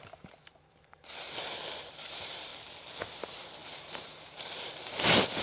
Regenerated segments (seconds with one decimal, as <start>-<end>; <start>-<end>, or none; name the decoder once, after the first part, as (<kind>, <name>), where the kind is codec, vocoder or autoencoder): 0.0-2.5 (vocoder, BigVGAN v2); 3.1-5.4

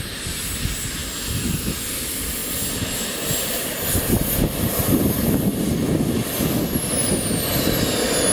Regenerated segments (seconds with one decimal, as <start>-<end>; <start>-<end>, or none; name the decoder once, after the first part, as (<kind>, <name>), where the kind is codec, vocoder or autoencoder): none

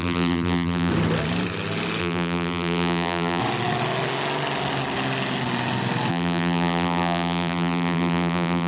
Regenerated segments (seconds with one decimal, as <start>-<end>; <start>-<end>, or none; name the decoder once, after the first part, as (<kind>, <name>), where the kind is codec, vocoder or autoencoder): 0.0-0.9 (vocoder, BigVGAN v2); 2.0-3.4; 6.1-8.7

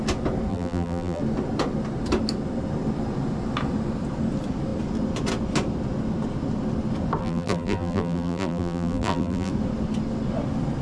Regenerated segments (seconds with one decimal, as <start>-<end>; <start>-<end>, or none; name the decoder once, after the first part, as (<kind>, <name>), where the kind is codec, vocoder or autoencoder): 0.5-1.2 (vocoder, BigVGAN v2); 7.2-9.5